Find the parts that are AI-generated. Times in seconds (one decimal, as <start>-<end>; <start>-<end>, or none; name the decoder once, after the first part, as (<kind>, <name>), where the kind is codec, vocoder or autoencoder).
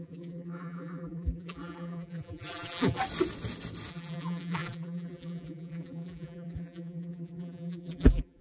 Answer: 0.0-3.0 (vocoder, BigVGAN v2); 3.9-8.4